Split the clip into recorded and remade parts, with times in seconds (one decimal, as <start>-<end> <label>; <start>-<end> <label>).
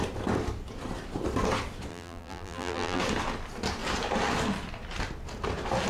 0.0-1.9 recorded; 1.9-3.0 remade; 3.0-5.9 recorded